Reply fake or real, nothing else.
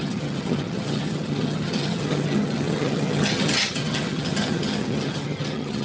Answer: fake